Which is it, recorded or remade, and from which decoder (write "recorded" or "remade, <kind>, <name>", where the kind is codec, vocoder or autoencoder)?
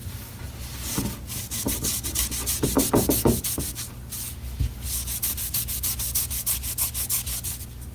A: recorded